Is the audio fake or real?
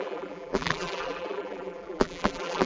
fake